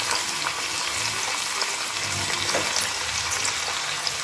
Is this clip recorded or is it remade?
recorded